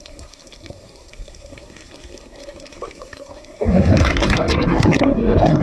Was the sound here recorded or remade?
remade